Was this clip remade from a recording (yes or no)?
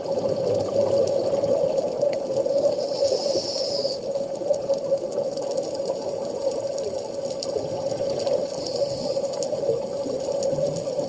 no